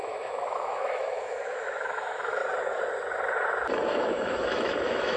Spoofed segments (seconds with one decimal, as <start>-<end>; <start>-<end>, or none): 0.0-2.4; 4.0-5.2